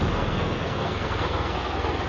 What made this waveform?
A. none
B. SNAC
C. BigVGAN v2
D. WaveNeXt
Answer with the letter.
B